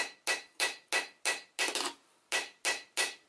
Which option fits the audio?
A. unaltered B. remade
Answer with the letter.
A